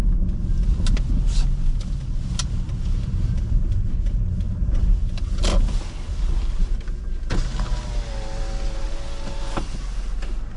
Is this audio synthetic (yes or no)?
no